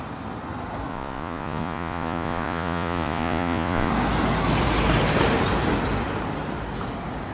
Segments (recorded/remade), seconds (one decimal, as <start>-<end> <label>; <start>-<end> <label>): 0.0-0.9 recorded; 0.9-3.9 remade; 3.9-7.3 recorded